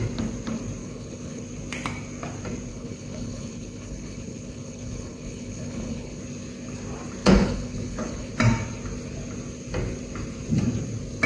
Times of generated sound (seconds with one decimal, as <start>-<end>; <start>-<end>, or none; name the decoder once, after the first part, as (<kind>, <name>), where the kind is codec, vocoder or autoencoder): 0.8-1.4 (codec, HILCodec); 2.7-6.2; 7.2-8.3